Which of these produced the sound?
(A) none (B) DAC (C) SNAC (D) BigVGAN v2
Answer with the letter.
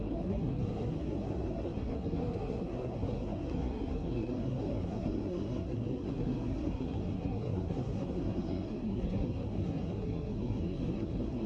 C